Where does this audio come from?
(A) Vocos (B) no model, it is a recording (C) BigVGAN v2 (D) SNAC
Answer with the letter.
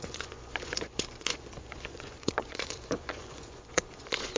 A